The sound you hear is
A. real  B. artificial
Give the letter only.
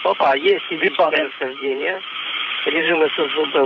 B